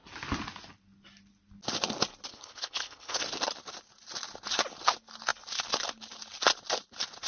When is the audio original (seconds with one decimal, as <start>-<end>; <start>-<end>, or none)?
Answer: 0.0-2.3; 3.2-7.3